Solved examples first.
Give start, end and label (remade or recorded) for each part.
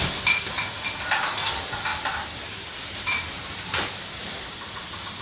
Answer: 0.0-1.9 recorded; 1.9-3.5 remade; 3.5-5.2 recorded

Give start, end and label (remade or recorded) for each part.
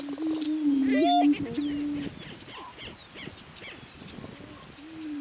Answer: 0.0-5.2 recorded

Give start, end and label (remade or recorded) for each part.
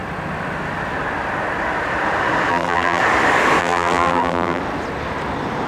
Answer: 0.0-2.5 recorded; 2.5-3.0 remade; 3.0-3.6 recorded; 3.6-4.6 remade; 4.6-5.7 recorded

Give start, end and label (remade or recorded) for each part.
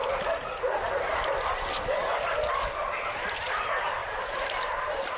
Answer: 0.0-4.0 recorded; 4.0-5.2 remade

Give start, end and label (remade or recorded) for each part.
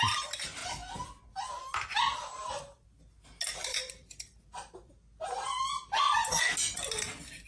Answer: 0.0-2.1 recorded; 2.1-3.0 remade; 3.0-3.7 recorded; 3.7-4.9 remade; 4.9-7.5 recorded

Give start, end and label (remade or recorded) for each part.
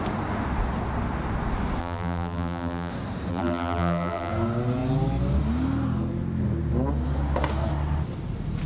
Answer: 0.0-1.8 recorded; 1.8-2.9 remade; 2.9-3.3 recorded; 3.3-4.3 remade; 4.3-8.7 recorded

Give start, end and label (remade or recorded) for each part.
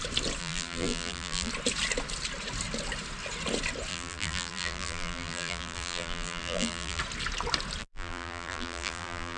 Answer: 0.0-0.4 recorded; 0.4-1.5 remade; 1.5-3.9 recorded; 3.9-7.0 remade; 7.0-7.8 recorded; 7.8-9.4 remade